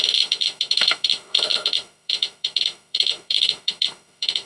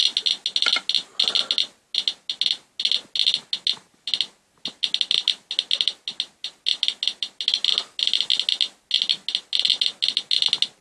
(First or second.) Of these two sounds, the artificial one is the first